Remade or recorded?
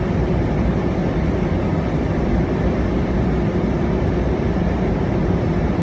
recorded